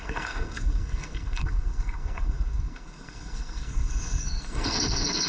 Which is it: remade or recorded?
remade